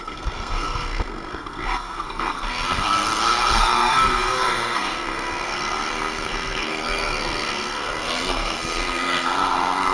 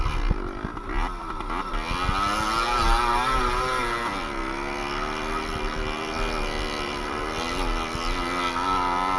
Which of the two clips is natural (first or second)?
second